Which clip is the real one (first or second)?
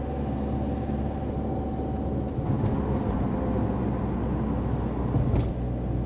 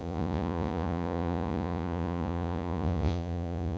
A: first